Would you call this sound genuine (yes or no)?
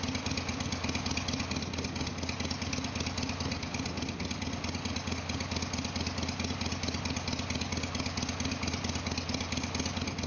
yes